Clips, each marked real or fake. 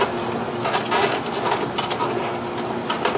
real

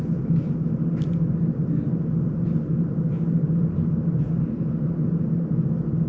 real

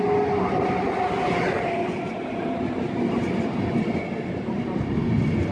real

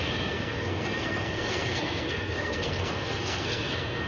fake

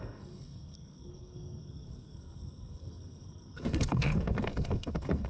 fake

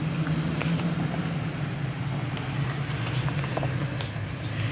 real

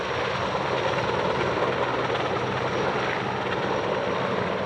real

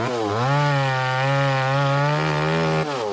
real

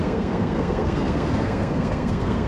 fake